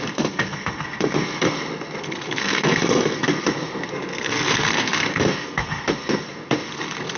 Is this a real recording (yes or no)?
no